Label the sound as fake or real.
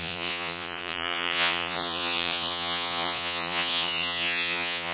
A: fake